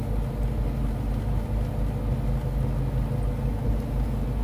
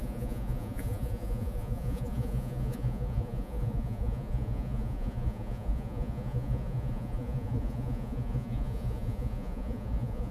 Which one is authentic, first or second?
first